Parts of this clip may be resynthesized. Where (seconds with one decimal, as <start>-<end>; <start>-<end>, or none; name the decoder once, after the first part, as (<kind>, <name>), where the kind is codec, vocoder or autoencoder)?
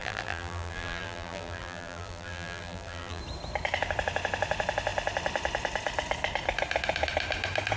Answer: 0.0-3.2 (vocoder, BigVGAN v2)